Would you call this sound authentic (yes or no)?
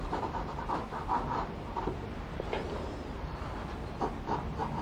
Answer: no